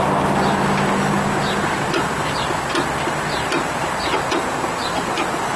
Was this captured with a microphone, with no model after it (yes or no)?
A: yes